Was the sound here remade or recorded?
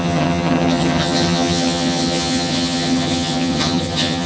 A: remade